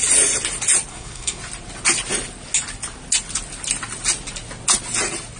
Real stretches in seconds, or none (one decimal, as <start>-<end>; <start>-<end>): 0.0-0.9; 1.4-5.4